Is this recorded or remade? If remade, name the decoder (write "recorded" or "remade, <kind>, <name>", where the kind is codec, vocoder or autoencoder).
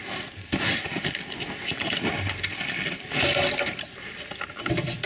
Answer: recorded